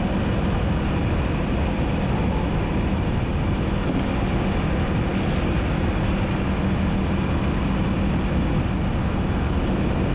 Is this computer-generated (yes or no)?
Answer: no